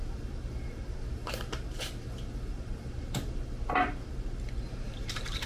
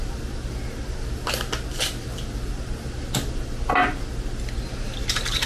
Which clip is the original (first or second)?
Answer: second